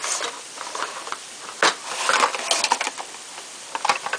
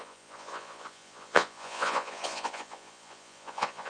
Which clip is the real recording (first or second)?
first